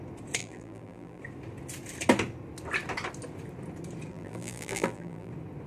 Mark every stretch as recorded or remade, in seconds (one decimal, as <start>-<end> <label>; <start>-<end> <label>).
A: 0.0-0.4 recorded; 0.4-1.2 remade; 1.2-4.1 recorded; 4.1-5.3 remade; 5.3-5.7 recorded